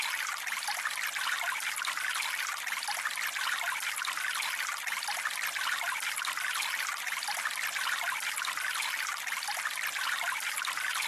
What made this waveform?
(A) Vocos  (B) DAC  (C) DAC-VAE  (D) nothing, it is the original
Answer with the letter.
D